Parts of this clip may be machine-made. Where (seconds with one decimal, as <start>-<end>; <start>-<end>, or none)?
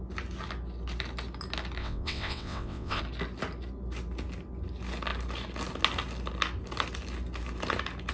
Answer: 1.8-3.0